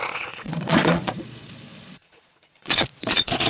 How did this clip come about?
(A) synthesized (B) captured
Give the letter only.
A